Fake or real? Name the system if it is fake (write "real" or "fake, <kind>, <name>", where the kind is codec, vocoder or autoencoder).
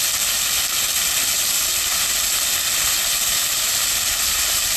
real